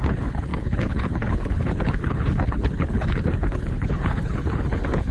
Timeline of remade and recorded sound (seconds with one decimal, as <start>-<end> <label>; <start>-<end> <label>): 0.0-5.1 remade